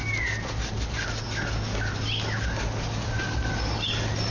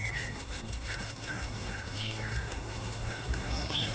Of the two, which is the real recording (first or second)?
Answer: first